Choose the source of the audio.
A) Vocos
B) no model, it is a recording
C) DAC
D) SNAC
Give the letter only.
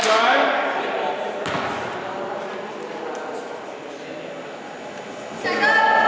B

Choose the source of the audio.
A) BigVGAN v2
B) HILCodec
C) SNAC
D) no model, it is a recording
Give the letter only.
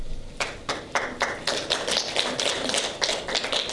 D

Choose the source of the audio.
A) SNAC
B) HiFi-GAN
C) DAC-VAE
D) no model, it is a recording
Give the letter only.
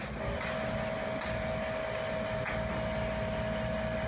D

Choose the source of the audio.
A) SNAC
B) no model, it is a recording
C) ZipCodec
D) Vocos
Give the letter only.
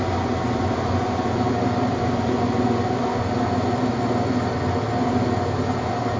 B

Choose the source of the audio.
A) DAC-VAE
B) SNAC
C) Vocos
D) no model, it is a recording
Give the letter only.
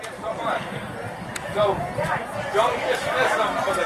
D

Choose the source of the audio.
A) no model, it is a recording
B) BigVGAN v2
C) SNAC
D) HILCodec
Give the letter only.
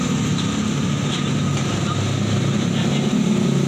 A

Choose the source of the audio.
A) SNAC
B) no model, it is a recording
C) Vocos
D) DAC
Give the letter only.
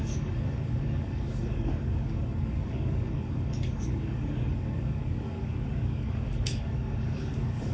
D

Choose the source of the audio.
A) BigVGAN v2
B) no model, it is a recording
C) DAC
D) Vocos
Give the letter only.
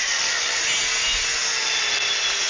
B